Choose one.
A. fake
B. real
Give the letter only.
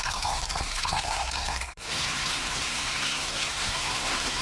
A